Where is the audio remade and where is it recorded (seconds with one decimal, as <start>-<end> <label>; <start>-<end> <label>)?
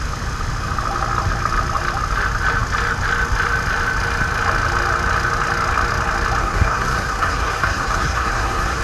0.0-6.4 recorded; 6.4-8.8 remade